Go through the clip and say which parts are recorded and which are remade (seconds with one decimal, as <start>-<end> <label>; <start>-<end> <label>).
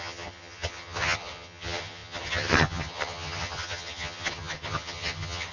0.0-5.5 remade